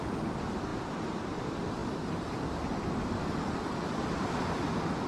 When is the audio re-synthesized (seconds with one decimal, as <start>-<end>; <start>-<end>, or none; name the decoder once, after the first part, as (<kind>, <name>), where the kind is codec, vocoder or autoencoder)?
none